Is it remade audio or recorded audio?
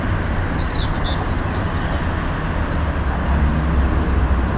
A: recorded